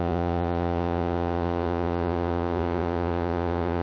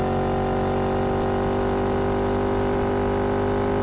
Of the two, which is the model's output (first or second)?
first